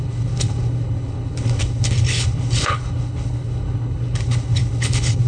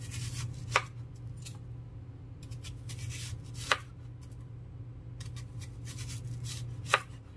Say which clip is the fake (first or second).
first